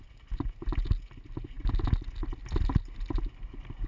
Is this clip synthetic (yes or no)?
no